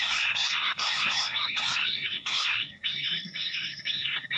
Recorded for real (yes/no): no